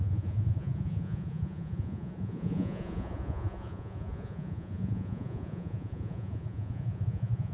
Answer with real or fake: fake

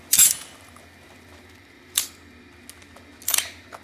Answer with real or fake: real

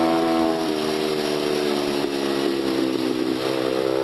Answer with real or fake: real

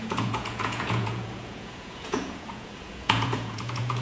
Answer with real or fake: fake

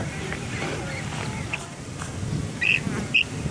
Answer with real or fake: real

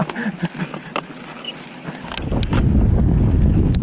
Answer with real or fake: real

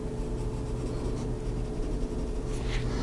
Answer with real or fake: real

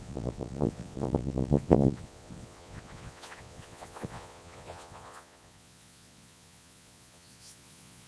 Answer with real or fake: fake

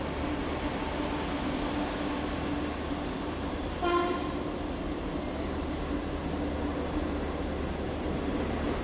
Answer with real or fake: real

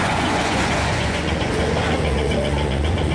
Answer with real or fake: fake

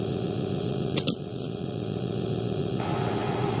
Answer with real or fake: fake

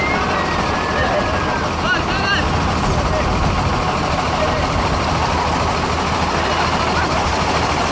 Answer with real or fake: real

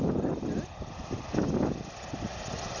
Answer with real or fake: real